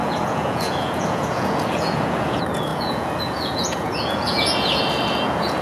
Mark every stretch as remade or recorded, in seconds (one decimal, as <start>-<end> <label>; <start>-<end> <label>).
0.0-5.6 remade

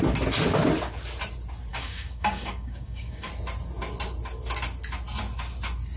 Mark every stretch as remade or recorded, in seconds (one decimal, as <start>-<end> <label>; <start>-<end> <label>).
0.0-1.7 recorded; 1.7-3.3 remade; 3.3-6.0 recorded

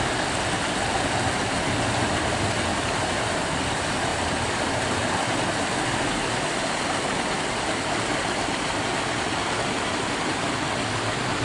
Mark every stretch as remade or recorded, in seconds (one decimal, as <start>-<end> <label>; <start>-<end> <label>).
0.0-2.7 recorded; 2.7-3.6 remade; 3.6-11.4 recorded

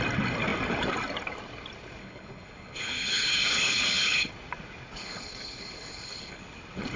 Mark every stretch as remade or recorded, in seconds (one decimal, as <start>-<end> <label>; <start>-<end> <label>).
0.0-2.0 recorded; 2.0-4.3 remade; 4.3-5.0 recorded; 5.0-6.4 remade; 6.4-7.0 recorded

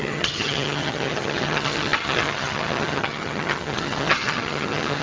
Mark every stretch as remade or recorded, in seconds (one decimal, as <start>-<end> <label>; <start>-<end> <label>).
0.0-5.0 remade

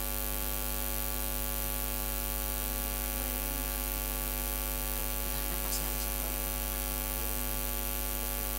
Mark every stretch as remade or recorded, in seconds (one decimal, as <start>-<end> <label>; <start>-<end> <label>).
0.0-8.6 recorded

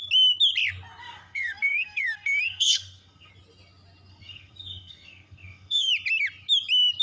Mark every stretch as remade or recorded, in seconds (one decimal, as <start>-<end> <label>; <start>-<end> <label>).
0.0-1.0 recorded; 1.0-3.3 remade; 3.3-4.1 recorded; 4.1-5.9 remade; 5.9-7.0 recorded